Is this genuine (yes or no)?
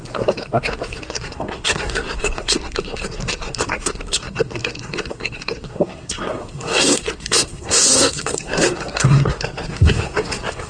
no